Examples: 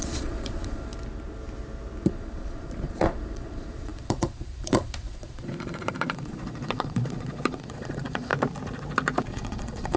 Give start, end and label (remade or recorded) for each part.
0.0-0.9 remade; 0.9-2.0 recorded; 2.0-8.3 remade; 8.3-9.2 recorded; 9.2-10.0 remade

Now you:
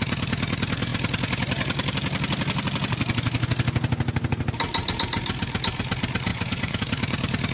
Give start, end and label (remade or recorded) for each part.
0.0-6.3 recorded; 6.3-6.8 remade; 6.8-7.5 recorded

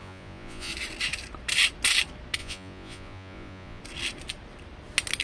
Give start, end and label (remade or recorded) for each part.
0.0-0.7 remade; 0.7-2.4 recorded; 2.4-3.8 remade; 3.8-5.2 recorded

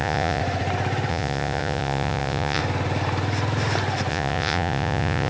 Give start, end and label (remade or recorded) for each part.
0.0-0.4 remade; 0.4-1.1 recorded; 1.1-2.6 remade; 2.6-4.1 recorded; 4.1-5.3 remade

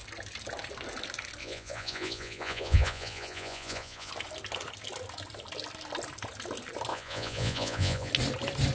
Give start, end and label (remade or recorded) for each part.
0.0-1.4 recorded; 1.4-4.1 remade; 4.1-6.9 recorded; 6.9-8.1 remade; 8.1-8.7 recorded

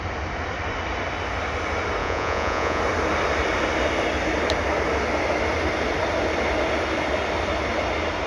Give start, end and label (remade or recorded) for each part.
0.0-2.0 recorded; 2.0-2.8 remade; 2.8-8.3 recorded

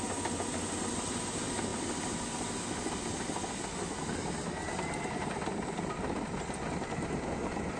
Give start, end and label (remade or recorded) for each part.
0.0-7.8 recorded